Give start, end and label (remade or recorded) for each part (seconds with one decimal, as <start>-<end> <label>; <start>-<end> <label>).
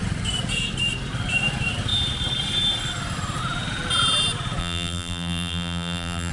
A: 0.0-4.6 recorded; 4.6-6.3 remade